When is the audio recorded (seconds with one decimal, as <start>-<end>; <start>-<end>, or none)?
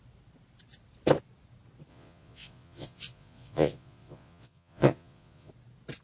0.0-1.9; 5.5-6.0